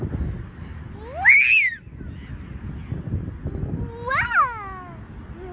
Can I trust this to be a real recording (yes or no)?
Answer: yes